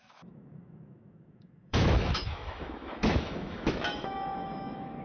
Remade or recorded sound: remade